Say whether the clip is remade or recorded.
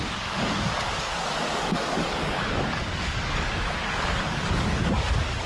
remade